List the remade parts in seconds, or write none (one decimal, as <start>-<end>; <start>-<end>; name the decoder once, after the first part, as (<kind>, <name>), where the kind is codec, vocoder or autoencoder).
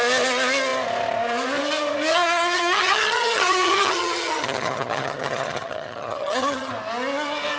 2.1-6.7 (vocoder, HiFi-GAN)